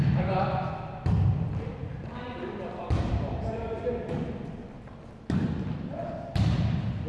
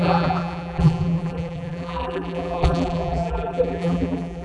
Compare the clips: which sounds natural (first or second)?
first